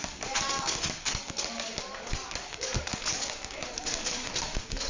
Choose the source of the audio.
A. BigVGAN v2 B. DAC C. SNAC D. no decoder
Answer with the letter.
B